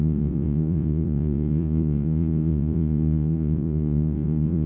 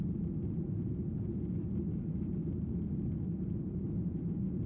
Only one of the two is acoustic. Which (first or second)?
second